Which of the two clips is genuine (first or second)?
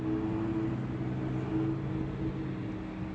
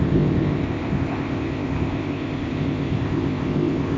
first